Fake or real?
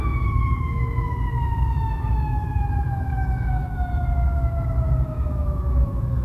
fake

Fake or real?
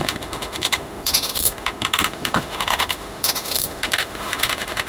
fake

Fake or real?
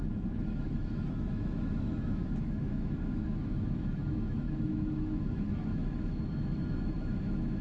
fake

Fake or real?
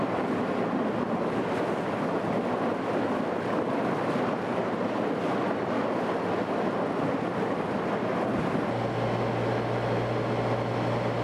real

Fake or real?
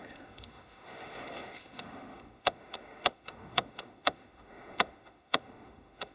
fake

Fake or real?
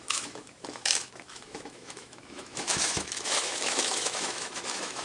fake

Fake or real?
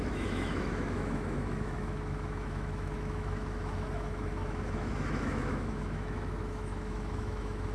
fake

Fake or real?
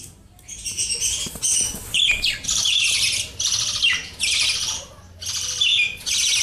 real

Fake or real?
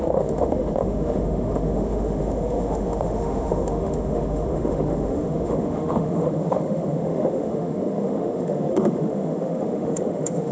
fake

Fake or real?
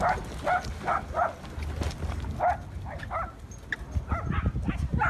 real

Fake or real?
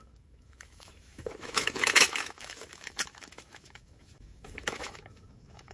fake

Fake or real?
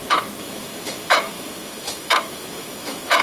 fake